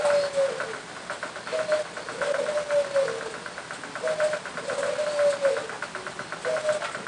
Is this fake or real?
real